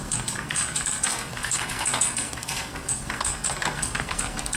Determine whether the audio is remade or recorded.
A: remade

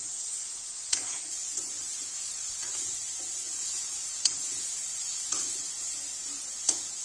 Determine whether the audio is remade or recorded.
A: remade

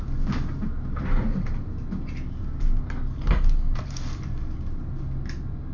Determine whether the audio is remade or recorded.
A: recorded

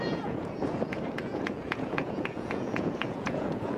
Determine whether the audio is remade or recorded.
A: remade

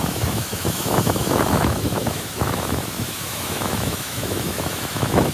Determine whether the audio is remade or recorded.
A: remade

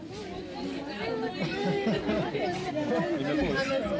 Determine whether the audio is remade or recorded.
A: recorded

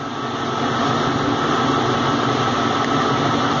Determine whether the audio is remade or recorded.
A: recorded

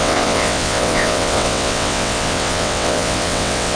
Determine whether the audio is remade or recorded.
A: remade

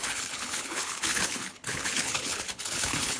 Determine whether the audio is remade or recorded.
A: remade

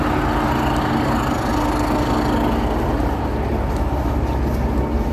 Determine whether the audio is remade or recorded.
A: recorded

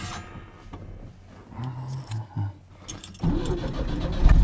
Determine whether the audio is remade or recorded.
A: recorded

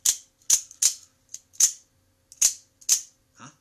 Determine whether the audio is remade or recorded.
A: recorded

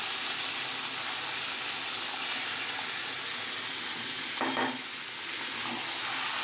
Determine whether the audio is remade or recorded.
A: recorded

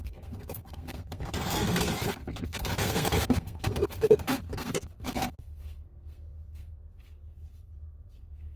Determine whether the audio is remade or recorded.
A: remade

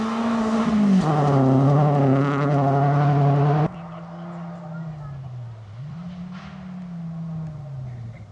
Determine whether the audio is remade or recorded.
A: recorded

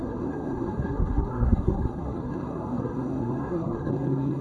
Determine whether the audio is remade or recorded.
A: remade